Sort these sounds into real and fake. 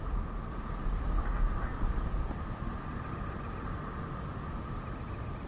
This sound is real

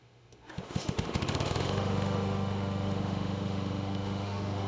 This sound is fake